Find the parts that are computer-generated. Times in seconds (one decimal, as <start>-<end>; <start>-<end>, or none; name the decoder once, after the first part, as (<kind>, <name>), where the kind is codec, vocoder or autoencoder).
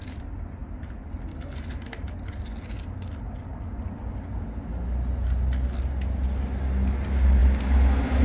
none